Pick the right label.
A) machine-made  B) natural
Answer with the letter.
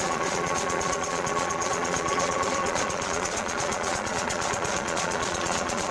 A